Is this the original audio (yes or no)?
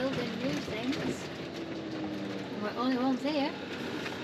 yes